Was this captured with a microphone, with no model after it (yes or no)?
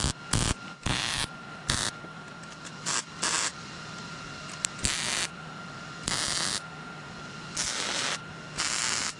yes